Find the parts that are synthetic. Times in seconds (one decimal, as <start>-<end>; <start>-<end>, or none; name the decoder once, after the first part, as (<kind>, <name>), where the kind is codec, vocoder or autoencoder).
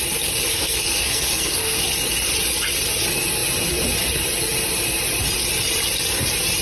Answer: 0.5-1.8 (codec, SNAC)